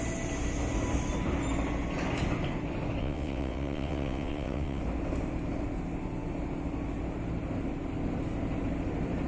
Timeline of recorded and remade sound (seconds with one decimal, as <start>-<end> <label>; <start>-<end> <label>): 0.0-3.0 recorded; 3.0-4.8 remade; 4.8-9.3 recorded